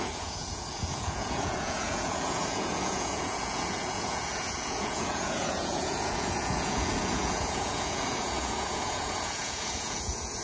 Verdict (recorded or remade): remade